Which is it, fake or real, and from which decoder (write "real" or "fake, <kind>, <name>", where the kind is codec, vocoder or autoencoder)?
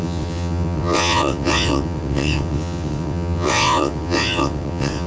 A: fake, vocoder, WaveNeXt